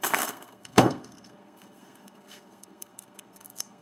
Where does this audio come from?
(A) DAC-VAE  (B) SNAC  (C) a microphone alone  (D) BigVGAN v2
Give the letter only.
B